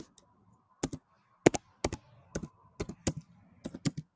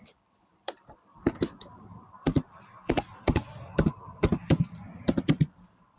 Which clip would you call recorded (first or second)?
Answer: first